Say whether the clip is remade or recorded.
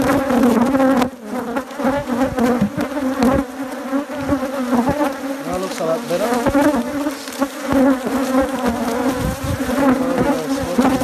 recorded